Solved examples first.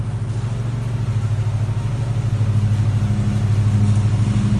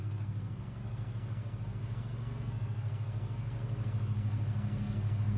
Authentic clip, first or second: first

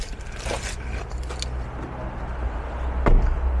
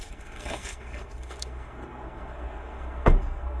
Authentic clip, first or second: first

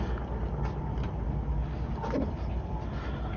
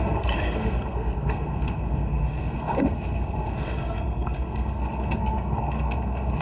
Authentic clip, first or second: first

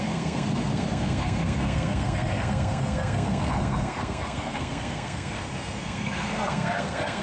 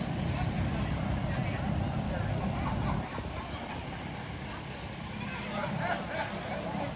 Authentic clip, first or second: second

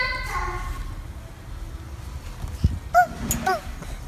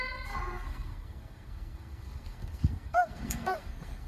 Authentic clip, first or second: first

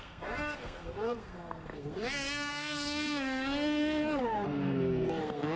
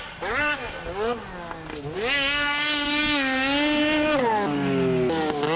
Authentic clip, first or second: second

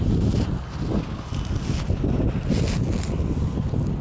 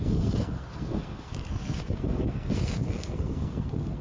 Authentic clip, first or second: first